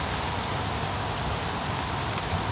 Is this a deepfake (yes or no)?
no